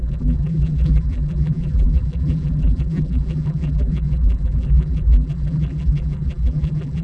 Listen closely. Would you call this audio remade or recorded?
remade